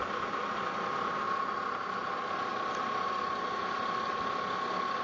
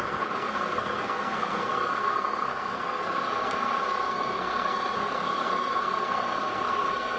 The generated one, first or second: second